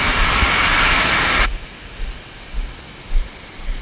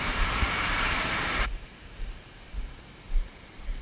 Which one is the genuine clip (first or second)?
first